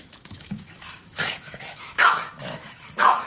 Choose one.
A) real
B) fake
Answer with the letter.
B